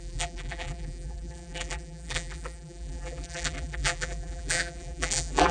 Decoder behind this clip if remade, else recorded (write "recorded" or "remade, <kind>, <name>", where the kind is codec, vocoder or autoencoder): remade, vocoder, BigVGAN v2